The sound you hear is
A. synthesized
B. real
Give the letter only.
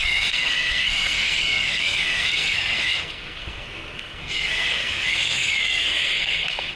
A